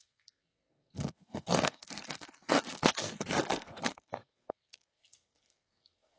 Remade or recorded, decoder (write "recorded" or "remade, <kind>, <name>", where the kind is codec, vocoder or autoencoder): remade, codec, SNAC